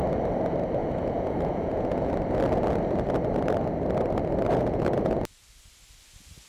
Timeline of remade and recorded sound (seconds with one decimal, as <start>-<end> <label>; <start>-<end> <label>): 0.0-0.8 recorded; 0.8-2.1 remade; 2.1-4.5 recorded; 4.5-5.2 remade; 5.2-6.5 recorded